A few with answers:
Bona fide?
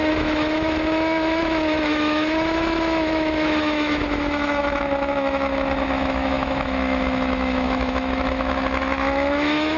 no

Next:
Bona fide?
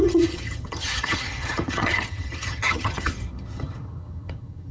no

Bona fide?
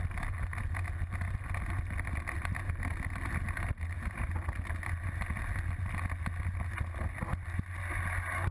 yes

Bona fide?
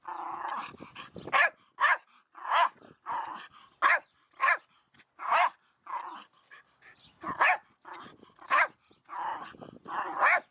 yes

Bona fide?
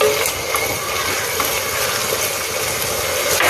yes